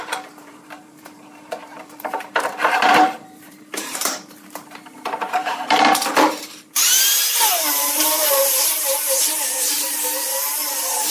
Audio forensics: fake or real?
fake